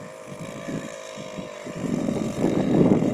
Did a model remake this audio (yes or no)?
no